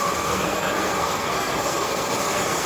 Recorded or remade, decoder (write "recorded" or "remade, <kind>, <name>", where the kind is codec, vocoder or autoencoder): remade, codec, SNAC